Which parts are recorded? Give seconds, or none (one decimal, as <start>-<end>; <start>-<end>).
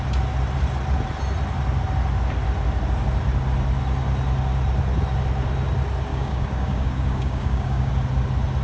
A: 0.0-6.1; 7.9-8.6